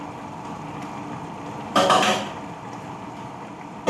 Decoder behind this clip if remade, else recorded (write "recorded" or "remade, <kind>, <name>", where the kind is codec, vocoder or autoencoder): remade, vocoder, BigVGAN v2